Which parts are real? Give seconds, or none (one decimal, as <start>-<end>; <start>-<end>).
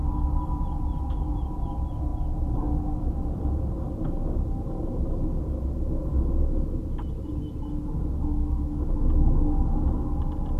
0.0-10.6